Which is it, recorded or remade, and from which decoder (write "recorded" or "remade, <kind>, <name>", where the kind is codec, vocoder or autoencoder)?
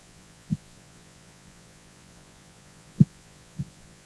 remade, vocoder, Vocos